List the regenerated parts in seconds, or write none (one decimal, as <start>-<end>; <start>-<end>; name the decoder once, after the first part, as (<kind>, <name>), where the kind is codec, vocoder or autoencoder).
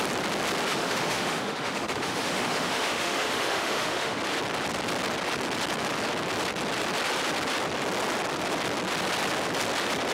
0.7-4.2 (autoencoder, DAC-VAE)